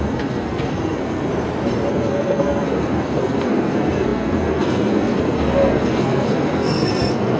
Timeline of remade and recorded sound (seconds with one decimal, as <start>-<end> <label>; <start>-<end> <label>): 0.0-1.3 remade; 1.3-1.9 recorded; 1.9-7.4 remade